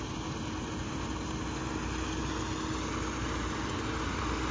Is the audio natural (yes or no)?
yes